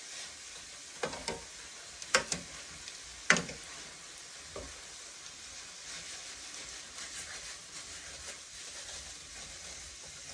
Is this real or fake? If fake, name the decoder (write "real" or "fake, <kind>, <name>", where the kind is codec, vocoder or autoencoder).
real